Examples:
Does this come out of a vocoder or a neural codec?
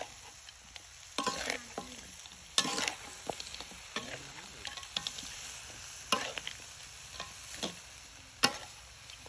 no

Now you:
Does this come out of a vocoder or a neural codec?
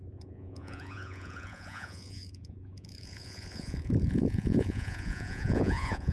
yes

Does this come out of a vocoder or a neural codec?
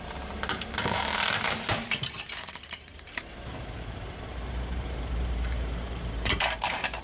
yes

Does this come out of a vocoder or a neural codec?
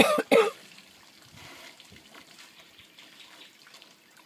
no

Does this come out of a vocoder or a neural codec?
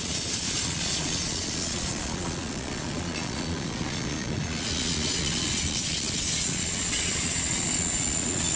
yes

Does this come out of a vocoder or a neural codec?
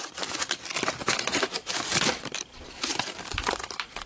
yes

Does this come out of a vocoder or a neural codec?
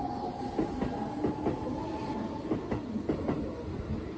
no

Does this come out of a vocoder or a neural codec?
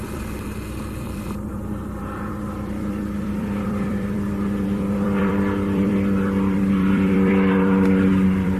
yes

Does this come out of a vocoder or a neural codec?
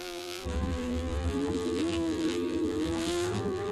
yes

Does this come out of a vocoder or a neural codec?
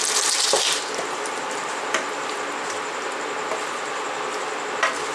no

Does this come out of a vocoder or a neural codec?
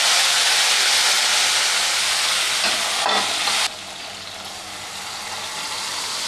no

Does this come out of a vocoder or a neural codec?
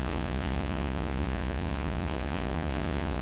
yes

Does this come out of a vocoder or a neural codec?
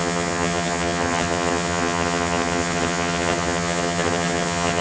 yes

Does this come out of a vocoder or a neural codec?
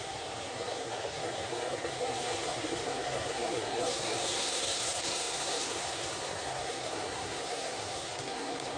yes